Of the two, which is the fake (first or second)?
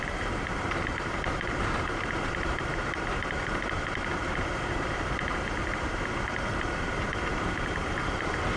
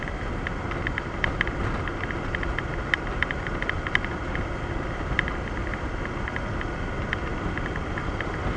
first